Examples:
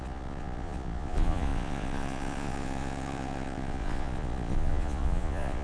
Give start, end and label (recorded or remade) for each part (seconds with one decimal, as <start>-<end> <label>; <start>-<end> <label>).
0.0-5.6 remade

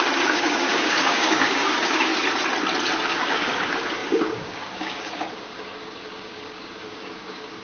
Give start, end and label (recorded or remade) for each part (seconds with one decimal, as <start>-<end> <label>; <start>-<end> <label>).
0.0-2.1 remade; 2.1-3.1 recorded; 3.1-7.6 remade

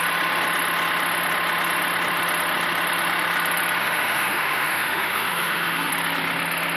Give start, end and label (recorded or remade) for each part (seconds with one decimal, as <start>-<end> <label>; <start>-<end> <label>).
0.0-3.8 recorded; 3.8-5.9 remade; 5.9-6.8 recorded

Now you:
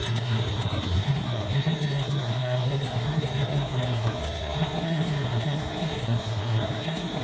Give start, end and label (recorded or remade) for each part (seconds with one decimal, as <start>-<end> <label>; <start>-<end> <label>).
0.0-7.2 remade

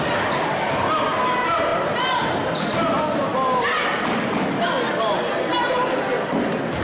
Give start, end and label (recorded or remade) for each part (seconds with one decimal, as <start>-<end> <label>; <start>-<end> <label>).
0.0-6.8 recorded

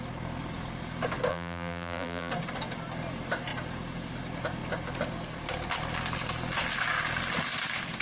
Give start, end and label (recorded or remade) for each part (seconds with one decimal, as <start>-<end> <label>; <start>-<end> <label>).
0.0-1.3 recorded; 1.3-2.3 remade; 2.3-8.0 recorded